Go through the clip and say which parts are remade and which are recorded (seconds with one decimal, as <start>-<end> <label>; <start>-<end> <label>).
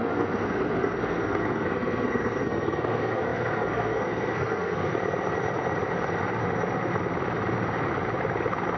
0.0-4.9 remade; 4.9-8.8 recorded